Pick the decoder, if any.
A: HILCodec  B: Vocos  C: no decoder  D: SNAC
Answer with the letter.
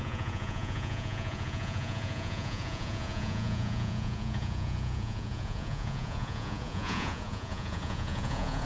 B